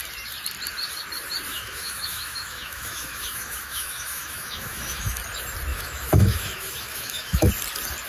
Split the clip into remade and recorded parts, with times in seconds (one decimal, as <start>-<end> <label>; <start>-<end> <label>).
0.0-1.5 recorded; 1.5-5.2 remade; 5.2-5.7 recorded; 5.7-7.5 remade; 7.5-8.1 recorded